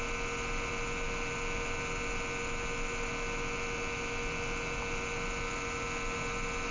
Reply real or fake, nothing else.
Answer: real